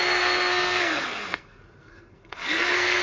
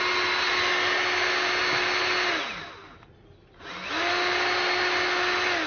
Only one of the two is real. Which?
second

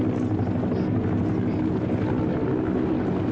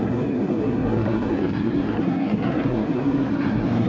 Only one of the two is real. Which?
first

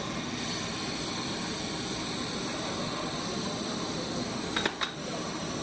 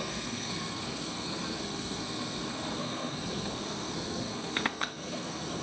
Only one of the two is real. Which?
first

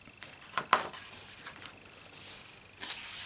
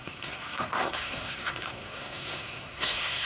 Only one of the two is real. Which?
first